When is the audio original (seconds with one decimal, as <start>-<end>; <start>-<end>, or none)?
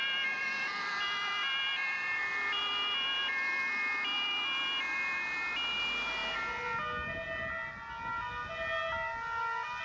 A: 0.0-9.8